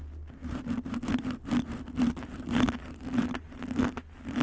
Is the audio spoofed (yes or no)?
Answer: no